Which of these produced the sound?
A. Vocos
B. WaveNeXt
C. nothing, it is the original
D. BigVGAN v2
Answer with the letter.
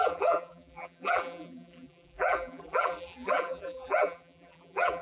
D